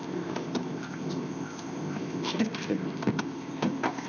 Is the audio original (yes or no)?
no